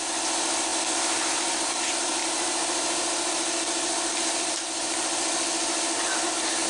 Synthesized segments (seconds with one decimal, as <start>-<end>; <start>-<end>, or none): none